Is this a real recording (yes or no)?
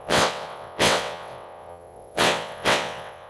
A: no